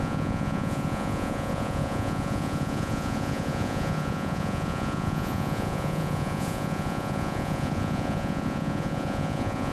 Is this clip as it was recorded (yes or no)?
no